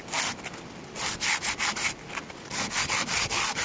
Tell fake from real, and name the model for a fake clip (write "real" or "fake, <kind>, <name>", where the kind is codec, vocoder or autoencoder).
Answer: real